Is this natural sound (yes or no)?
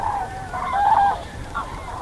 no